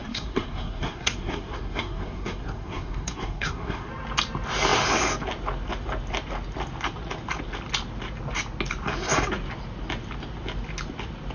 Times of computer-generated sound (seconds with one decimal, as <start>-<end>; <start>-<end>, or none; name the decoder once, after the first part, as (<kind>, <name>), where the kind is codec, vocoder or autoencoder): 0.0-3.9 (codec, SNAC)